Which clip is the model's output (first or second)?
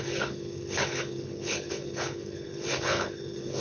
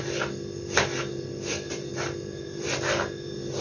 first